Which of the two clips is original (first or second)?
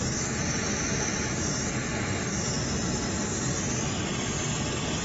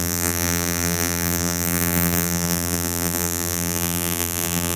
first